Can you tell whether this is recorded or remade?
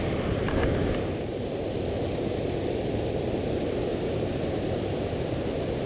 recorded